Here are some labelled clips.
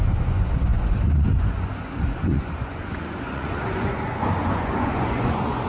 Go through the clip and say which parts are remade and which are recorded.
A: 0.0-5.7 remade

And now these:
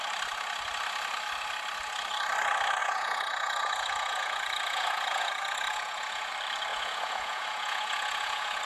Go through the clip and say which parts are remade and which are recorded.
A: 0.0-2.8 recorded; 2.8-6.3 remade; 6.3-6.7 recorded; 6.7-8.6 remade

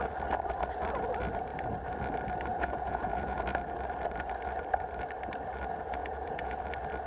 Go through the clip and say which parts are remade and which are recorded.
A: 0.0-2.5 recorded; 2.5-3.4 remade; 3.4-6.0 recorded; 6.0-6.6 remade; 6.6-7.1 recorded

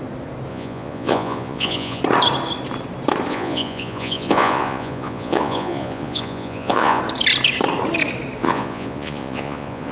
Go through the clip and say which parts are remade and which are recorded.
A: 0.0-0.5 recorded; 0.5-2.0 remade; 2.0-3.3 recorded; 3.3-7.0 remade; 7.0-8.4 recorded; 8.4-9.9 remade

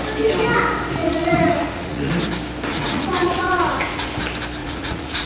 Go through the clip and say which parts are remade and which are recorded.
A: 0.0-1.0 recorded; 1.0-2.1 remade; 2.1-2.7 recorded; 2.7-4.1 remade; 4.1-4.6 recorded; 4.6-5.3 remade